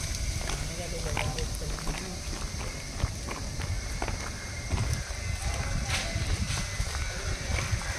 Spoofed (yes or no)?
no